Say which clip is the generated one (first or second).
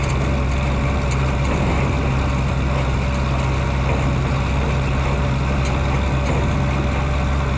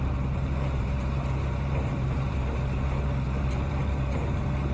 second